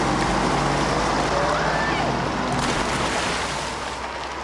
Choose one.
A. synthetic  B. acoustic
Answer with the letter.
B